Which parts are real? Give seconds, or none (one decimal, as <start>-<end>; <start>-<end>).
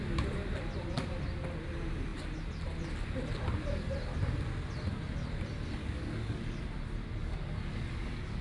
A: 0.0-5.8; 6.4-7.2